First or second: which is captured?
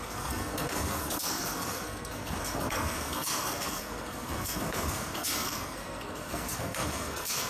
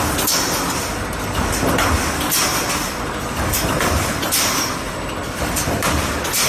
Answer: second